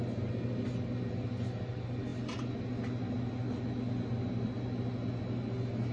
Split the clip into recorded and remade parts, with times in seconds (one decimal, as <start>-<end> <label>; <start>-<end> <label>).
0.0-5.9 recorded